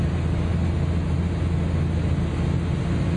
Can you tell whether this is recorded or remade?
recorded